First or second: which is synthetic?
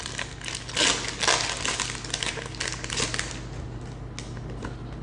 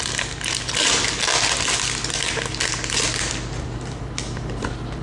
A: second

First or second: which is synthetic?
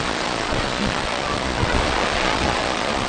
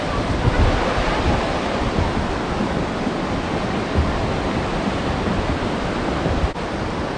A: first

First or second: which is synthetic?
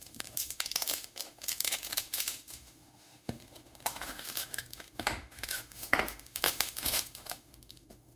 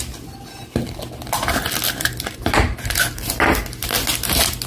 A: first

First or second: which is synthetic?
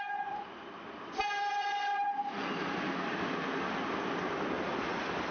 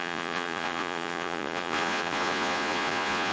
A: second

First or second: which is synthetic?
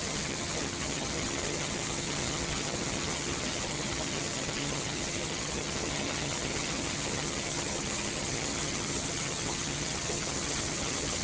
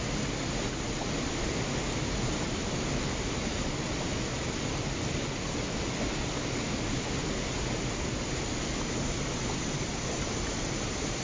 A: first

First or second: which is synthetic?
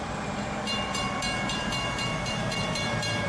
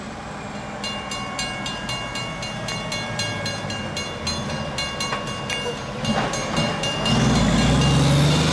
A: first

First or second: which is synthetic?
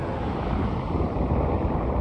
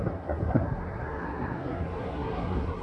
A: second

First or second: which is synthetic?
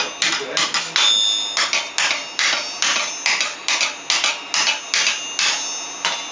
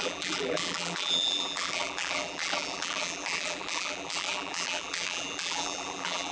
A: second